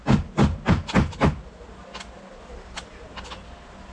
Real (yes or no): yes